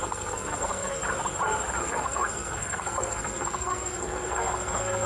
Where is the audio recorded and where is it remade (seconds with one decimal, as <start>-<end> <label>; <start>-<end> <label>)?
0.0-1.0 remade; 1.0-1.8 recorded; 1.8-5.1 remade